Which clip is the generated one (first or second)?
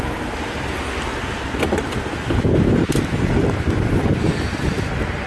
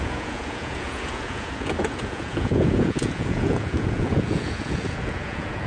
second